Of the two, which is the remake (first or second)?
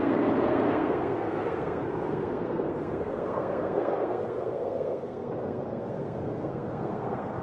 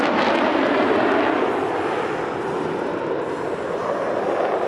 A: first